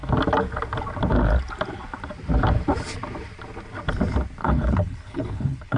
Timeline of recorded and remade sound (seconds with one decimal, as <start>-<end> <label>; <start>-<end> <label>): 0.0-4.4 recorded; 4.4-5.8 remade